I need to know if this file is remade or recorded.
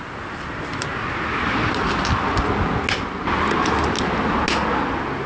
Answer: recorded